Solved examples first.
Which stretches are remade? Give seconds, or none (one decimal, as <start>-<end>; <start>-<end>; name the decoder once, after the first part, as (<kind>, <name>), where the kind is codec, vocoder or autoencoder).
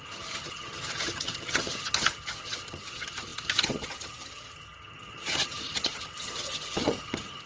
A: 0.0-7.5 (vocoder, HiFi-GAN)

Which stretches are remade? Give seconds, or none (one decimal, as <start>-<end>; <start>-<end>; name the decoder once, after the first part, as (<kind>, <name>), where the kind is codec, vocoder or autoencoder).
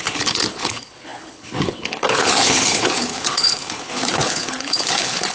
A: 0.0-5.3 (codec, HILCodec)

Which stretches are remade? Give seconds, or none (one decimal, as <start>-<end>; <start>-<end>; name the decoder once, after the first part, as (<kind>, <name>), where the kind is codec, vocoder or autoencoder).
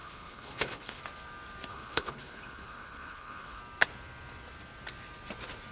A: 0.0-1.0 (codec, HILCodec); 1.7-3.6